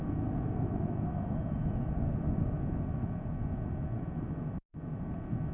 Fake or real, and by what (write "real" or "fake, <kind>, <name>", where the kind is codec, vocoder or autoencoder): real